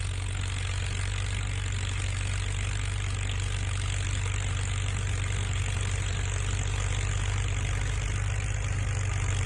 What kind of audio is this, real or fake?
real